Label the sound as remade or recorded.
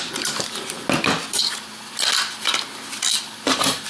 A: recorded